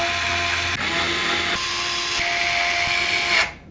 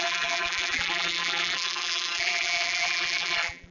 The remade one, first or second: second